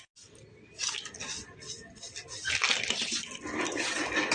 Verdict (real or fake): real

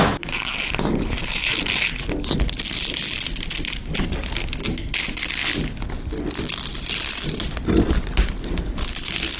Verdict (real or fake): real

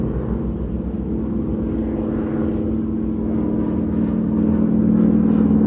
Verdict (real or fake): real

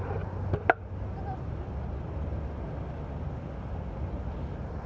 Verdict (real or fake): real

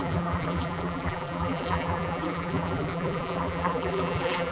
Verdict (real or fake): fake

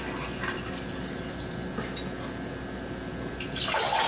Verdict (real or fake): real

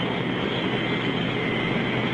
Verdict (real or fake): real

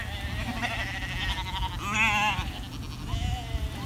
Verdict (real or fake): real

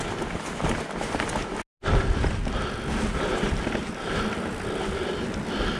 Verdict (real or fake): real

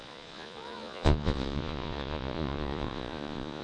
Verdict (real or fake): fake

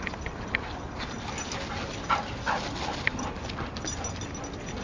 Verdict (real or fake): real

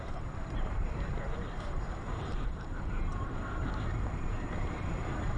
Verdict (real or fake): fake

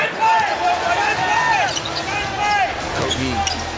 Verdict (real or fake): real